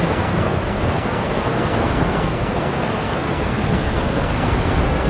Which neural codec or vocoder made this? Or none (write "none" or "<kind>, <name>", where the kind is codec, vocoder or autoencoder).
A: codec, SNAC